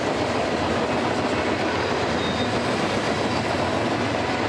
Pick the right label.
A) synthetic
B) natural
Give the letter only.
B